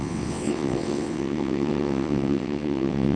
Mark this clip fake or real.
fake